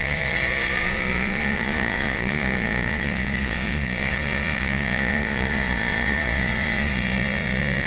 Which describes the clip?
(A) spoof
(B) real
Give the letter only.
A